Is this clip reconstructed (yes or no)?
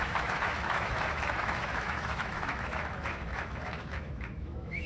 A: yes